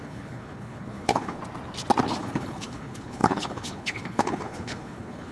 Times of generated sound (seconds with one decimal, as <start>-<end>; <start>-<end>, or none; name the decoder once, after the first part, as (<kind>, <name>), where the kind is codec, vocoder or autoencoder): 0.0-1.4 (codec, HILCodec); 2.2-5.3